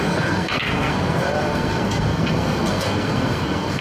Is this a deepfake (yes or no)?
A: yes